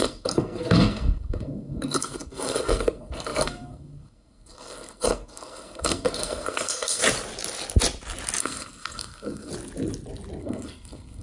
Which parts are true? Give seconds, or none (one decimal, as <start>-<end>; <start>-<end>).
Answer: 7.0-8.4; 9.5-10.4